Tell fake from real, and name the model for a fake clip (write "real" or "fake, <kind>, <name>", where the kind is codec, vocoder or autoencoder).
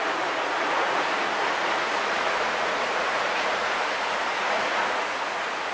fake, vocoder, Vocos